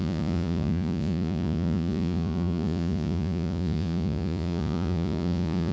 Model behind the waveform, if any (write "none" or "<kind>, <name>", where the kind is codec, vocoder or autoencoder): vocoder, Vocos